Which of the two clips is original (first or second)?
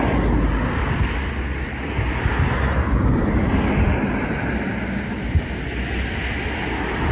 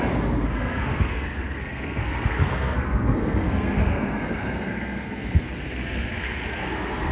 first